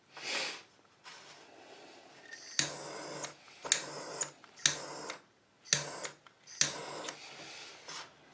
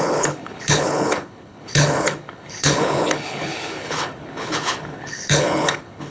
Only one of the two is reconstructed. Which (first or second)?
second